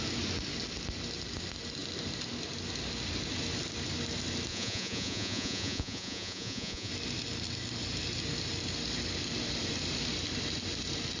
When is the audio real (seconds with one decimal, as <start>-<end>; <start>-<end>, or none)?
0.0-4.5; 6.9-11.2